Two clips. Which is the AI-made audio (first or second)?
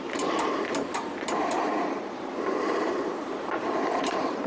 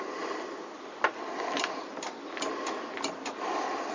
first